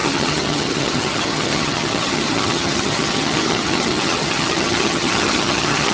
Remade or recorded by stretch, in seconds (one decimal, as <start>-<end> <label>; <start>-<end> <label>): 0.0-5.9 remade